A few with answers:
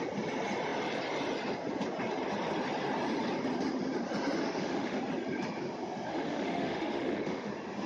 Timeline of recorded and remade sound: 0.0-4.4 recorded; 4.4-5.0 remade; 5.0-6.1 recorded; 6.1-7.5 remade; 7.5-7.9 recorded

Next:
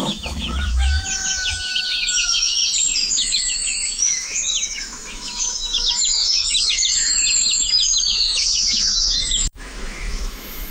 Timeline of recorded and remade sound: 0.0-2.6 remade; 2.6-3.1 recorded; 3.1-10.7 remade

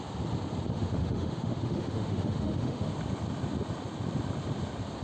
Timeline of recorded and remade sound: 0.0-0.7 recorded; 0.7-2.9 remade; 2.9-5.0 recorded

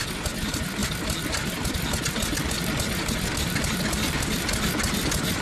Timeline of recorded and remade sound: 0.0-5.4 recorded

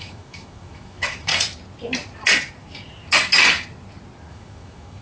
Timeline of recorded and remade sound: 0.0-1.3 remade; 1.3-4.3 recorded; 4.3-5.0 remade